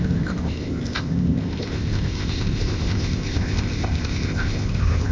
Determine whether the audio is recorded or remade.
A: remade